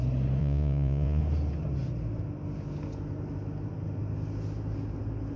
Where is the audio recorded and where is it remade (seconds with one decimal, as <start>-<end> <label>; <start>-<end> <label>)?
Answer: 0.0-0.4 recorded; 0.4-1.2 remade; 1.2-5.4 recorded